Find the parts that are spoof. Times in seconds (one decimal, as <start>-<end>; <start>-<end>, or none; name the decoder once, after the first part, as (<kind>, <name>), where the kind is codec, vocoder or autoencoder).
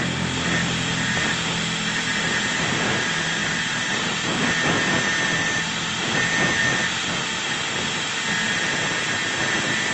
none